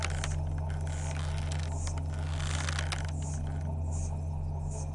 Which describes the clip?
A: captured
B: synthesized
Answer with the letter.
A